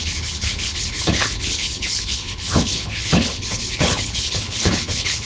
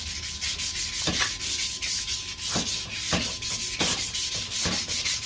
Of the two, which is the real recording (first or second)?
second